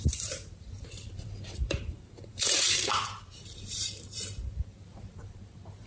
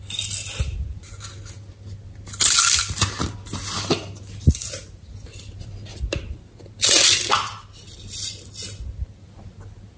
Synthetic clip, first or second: first